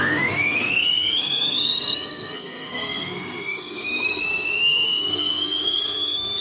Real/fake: fake